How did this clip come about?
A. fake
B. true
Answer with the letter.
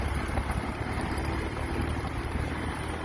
B